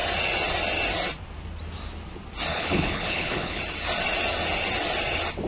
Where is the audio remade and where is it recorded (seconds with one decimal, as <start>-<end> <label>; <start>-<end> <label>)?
0.0-2.5 recorded; 2.5-3.6 remade; 3.6-5.5 recorded